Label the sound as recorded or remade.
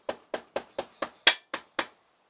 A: recorded